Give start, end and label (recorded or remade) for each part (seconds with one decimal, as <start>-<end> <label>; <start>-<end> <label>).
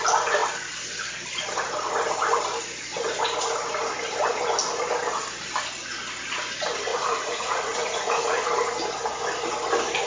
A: 0.0-6.9 recorded; 6.9-8.5 remade; 8.5-10.1 recorded